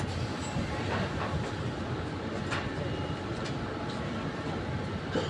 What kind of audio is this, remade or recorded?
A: recorded